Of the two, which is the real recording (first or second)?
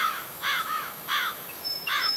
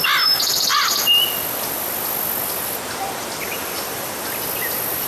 second